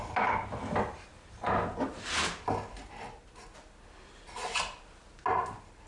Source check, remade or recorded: recorded